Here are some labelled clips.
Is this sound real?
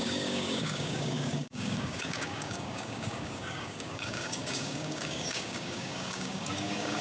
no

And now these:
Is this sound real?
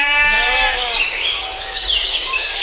no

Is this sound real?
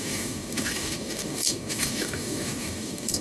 no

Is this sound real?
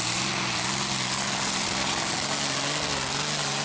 yes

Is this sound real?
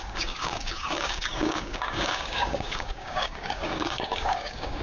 no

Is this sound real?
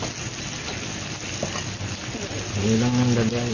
yes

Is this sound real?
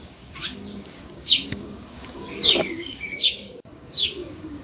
no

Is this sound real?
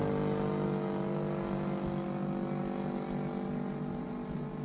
yes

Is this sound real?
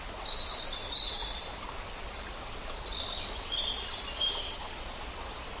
yes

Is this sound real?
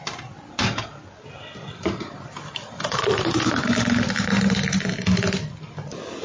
yes